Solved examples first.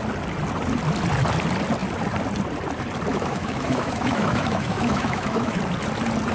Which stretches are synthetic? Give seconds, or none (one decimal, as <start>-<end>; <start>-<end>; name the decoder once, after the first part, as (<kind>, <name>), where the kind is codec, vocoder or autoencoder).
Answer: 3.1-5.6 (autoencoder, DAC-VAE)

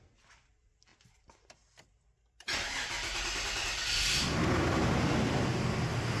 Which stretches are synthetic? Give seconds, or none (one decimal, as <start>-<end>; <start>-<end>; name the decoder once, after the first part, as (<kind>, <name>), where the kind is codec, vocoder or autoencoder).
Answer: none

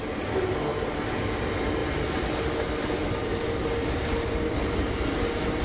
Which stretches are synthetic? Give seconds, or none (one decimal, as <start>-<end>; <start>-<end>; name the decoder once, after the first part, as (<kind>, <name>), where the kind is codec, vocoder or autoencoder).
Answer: none

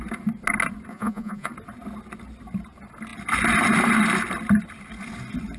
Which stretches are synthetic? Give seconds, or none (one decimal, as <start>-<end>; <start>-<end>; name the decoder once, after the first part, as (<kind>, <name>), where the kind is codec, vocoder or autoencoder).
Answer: 0.9-1.5 (vocoder, Vocos)